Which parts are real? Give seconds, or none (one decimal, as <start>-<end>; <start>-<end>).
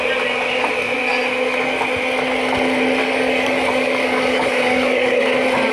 0.0-3.0; 5.2-5.7